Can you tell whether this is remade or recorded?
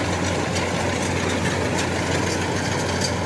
recorded